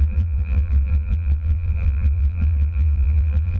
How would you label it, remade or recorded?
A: remade